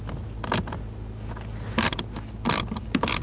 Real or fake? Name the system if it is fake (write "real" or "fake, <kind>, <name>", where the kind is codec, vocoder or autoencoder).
real